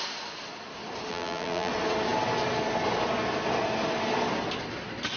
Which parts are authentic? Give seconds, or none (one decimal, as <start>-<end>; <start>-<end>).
0.0-1.1; 1.7-5.2